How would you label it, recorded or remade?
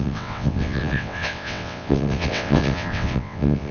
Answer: remade